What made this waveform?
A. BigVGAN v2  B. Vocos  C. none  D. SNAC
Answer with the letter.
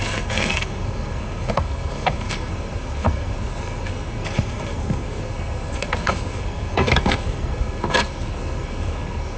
D